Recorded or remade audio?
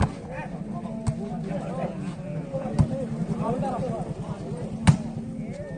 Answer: recorded